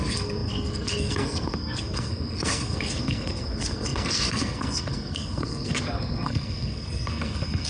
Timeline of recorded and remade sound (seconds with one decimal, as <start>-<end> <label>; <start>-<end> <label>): 0.0-7.7 remade

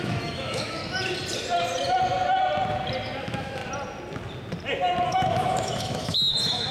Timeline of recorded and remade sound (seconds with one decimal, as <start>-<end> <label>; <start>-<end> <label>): 0.0-0.8 remade; 0.8-3.2 recorded; 3.2-3.6 remade; 3.6-5.1 recorded; 5.1-6.7 remade

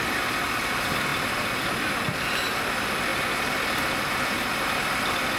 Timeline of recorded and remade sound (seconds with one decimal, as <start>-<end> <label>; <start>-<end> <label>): 0.0-5.4 recorded